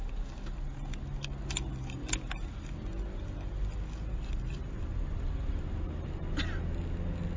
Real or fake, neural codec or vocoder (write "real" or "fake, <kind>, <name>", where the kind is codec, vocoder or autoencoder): real